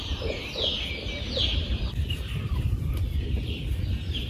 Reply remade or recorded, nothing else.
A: recorded